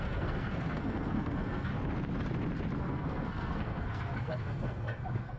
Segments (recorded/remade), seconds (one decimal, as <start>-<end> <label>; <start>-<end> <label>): 0.0-1.7 remade; 1.7-2.8 recorded; 2.8-5.4 remade

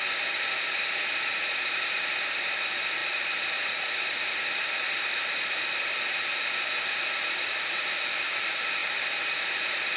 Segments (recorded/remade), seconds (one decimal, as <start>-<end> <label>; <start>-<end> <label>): 0.0-10.0 recorded

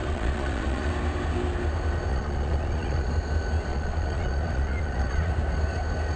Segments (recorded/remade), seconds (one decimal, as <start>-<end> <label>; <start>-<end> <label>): 0.0-0.9 remade; 0.9-2.1 recorded; 2.1-3.1 remade; 3.1-3.7 recorded; 3.7-5.3 remade; 5.3-6.2 recorded

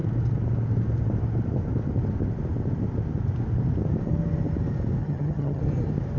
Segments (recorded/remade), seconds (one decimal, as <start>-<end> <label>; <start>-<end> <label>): 0.0-5.0 recorded; 5.0-5.6 remade; 5.6-6.2 recorded

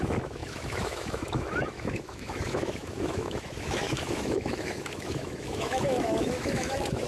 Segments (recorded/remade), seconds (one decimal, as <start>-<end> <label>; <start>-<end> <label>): 0.0-7.1 remade

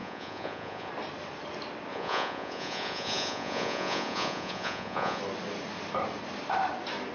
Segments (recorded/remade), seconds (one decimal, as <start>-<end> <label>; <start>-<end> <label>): 0.0-0.9 remade; 0.9-1.9 recorded; 1.9-5.2 remade; 5.2-7.1 recorded

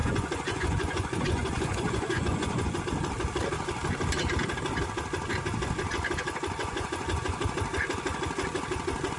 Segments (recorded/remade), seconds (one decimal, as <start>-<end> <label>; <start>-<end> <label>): 0.0-2.8 remade; 2.8-6.6 recorded; 6.6-7.4 remade; 7.4-9.2 recorded

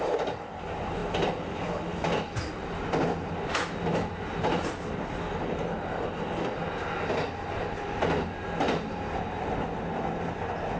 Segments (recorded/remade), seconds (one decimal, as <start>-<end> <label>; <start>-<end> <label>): 0.0-10.8 recorded